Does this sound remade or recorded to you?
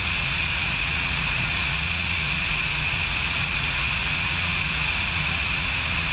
remade